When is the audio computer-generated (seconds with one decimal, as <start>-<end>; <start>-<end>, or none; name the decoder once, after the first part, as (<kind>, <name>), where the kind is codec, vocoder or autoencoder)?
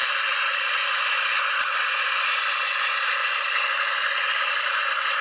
none